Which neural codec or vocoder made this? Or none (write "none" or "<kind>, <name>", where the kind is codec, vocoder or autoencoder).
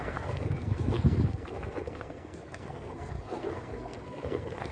codec, SNAC